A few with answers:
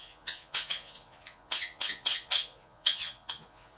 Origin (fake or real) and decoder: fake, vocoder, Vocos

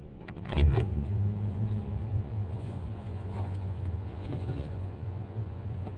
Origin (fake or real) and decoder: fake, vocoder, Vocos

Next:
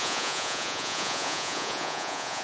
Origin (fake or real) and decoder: fake, vocoder, Vocos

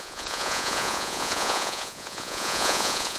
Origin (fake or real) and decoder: fake, vocoder, Vocos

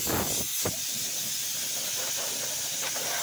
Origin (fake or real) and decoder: real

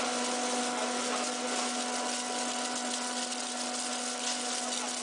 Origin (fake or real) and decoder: real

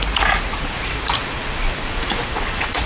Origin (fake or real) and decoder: fake, vocoder, Vocos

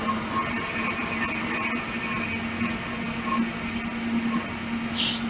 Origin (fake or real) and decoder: real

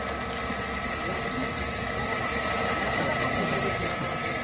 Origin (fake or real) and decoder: real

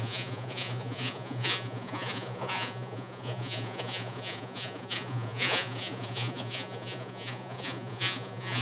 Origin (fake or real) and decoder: fake, vocoder, Vocos